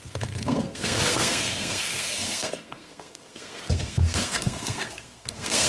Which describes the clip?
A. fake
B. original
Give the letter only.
A